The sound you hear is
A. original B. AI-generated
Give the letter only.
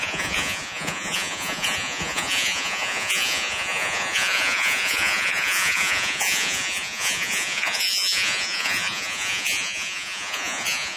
B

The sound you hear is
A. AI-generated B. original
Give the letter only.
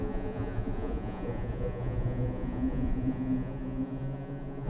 A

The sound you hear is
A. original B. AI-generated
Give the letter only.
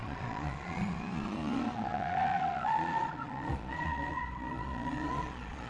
B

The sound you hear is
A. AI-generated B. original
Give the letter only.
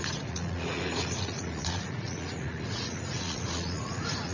A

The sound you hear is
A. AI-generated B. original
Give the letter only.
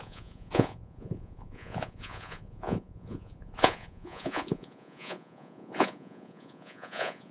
A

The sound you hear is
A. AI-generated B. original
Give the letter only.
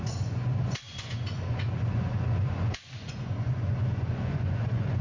A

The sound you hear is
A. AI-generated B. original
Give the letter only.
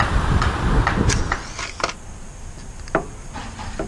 B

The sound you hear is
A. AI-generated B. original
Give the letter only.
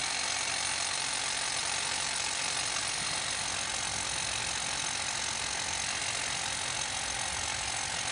B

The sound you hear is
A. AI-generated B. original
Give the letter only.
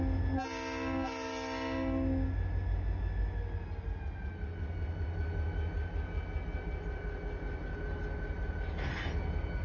B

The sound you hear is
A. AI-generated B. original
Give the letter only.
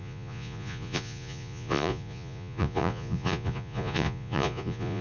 A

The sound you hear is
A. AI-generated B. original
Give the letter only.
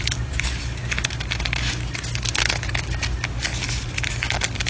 B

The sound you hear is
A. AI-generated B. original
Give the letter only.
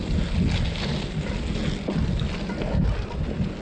B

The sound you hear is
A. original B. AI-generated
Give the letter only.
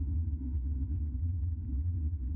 B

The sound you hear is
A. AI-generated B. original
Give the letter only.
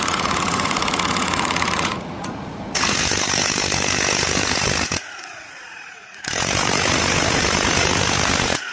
A